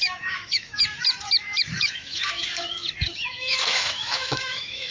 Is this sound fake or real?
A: fake